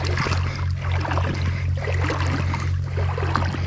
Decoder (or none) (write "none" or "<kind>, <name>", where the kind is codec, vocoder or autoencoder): none